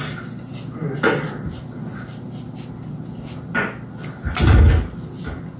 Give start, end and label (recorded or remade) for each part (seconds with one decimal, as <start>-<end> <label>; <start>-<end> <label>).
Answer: 0.0-5.6 recorded